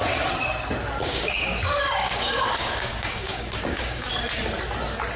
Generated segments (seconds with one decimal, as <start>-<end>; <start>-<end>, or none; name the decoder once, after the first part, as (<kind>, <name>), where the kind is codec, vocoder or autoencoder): 1.0-4.1 (codec, DAC)